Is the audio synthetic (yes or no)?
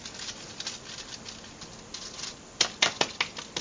no